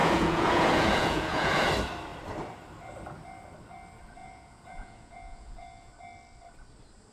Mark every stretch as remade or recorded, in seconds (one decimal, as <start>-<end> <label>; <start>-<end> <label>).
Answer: 0.0-1.7 remade; 1.7-4.2 recorded; 4.2-5.9 remade; 5.9-7.1 recorded